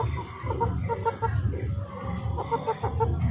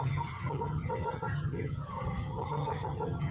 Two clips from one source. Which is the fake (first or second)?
second